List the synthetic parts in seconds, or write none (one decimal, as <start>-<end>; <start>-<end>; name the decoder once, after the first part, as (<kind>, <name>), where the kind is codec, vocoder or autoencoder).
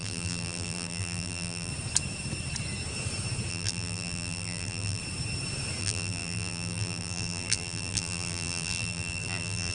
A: 0.0-1.7 (vocoder, BigVGAN v2); 3.5-5.0; 5.8-9.7